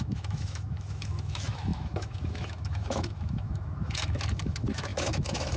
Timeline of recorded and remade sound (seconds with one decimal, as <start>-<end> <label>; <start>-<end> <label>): 0.0-5.6 remade